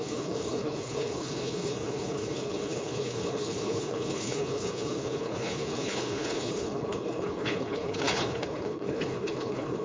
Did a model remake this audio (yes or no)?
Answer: yes